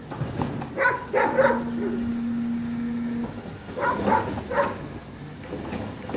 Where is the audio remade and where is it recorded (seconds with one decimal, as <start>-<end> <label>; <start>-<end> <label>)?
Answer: 0.0-2.1 recorded; 2.1-3.2 remade; 3.2-6.2 recorded

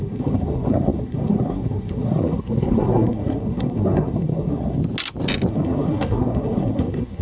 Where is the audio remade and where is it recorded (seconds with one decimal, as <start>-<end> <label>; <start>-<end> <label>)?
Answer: 0.0-4.8 remade; 4.8-5.5 recorded; 5.5-7.2 remade

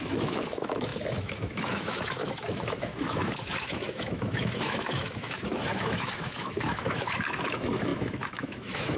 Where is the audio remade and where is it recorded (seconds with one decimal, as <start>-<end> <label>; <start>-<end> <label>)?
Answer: 0.0-9.0 remade

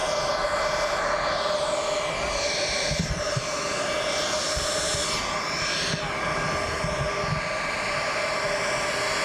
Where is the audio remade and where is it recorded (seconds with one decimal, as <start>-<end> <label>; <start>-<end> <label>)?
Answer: 0.0-9.2 recorded

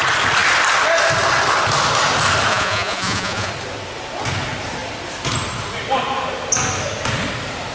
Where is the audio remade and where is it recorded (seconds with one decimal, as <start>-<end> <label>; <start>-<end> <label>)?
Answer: 0.0-2.5 recorded; 2.5-3.5 remade; 3.5-7.7 recorded

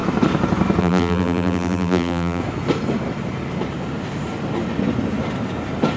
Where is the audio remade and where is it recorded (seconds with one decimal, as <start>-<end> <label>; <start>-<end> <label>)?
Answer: 0.0-0.8 recorded; 0.8-2.4 remade; 2.4-6.0 recorded

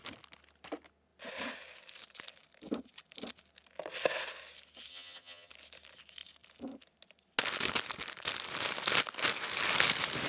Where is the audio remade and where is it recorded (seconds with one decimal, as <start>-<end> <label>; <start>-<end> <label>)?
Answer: 0.0-4.9 recorded; 4.9-5.5 remade; 5.5-10.3 recorded